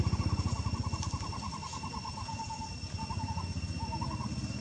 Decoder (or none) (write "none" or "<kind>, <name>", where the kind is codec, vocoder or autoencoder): none